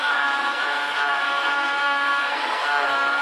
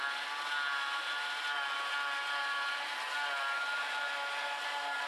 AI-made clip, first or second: first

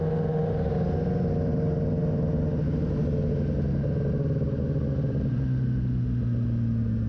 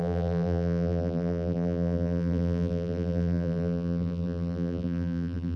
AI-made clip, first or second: second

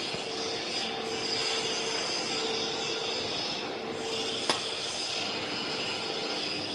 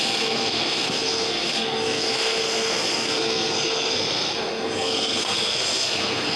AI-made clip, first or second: second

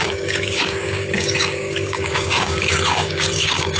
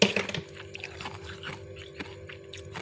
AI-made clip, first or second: first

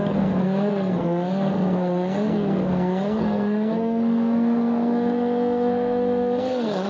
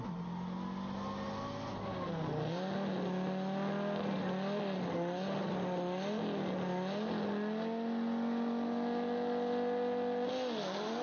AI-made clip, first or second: first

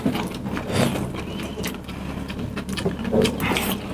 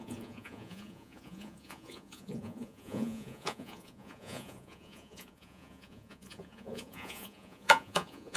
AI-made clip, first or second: second